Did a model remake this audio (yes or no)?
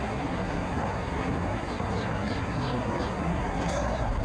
yes